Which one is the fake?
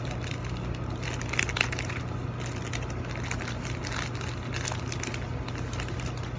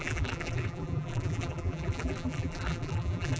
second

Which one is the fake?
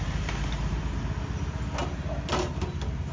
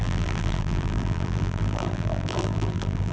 second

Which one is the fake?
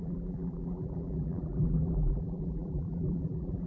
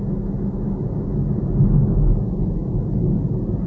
first